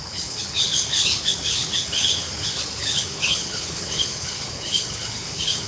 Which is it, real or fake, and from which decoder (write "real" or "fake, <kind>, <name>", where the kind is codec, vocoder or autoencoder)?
fake, codec, HILCodec